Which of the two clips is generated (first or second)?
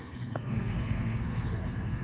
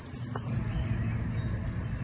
first